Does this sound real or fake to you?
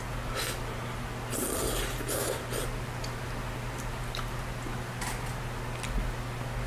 real